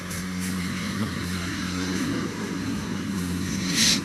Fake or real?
fake